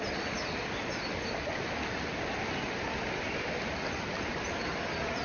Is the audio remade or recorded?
recorded